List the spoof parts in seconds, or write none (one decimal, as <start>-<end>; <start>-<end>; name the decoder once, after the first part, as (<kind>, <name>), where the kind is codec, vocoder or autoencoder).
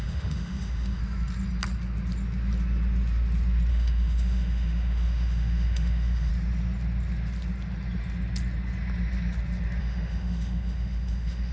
0.0-1.0 (autoencoder, DAC-VAE); 3.7-6.3; 9.8-11.5